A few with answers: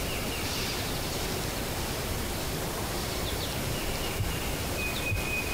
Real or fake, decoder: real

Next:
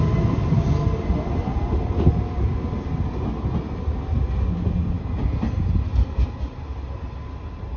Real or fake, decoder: real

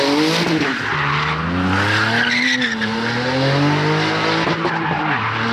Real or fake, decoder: real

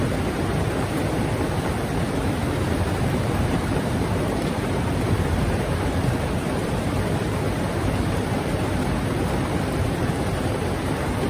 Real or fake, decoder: fake, vocoder, BigVGAN v2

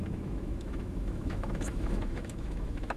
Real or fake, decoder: fake, autoencoder, DAC-VAE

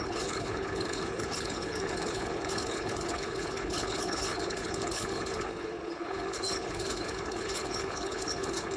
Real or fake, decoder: fake, codec, HILCodec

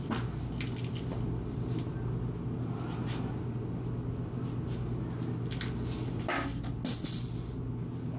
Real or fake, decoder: real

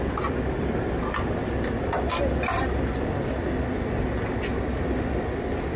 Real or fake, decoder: real